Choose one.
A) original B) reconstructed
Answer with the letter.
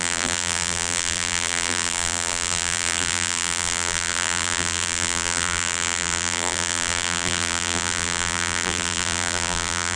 B